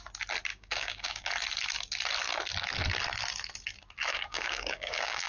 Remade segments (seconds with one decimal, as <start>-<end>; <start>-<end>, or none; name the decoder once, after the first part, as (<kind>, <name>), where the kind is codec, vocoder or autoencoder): 0.5-1.3 (codec, DAC); 4.1-5.3